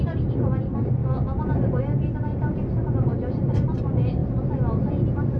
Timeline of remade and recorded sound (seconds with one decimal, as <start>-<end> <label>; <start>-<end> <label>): 0.0-3.1 recorded; 3.1-3.8 remade; 3.8-5.4 recorded